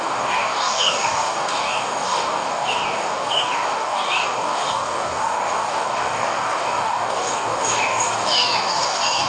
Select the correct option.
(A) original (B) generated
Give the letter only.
B